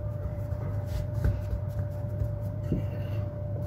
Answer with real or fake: fake